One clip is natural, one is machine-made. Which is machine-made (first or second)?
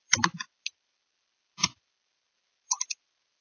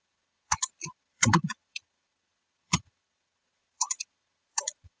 second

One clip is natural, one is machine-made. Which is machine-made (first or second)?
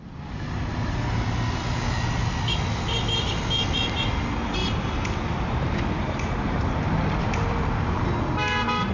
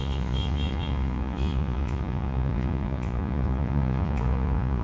second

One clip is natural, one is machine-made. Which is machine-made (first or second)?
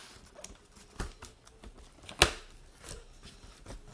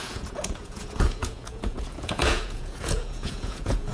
second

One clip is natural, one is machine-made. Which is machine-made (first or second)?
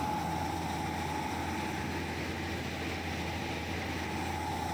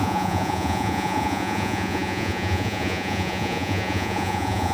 second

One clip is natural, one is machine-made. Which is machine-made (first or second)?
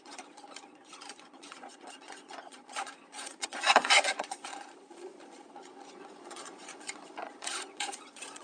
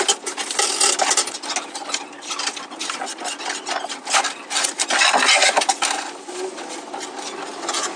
first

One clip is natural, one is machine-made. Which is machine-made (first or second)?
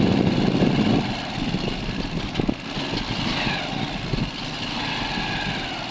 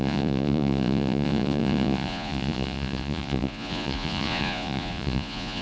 second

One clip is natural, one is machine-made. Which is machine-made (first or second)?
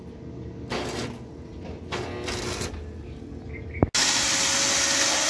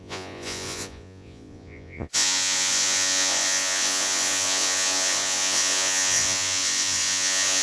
second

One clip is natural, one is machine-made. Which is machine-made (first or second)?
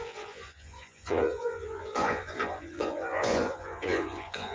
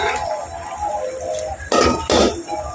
first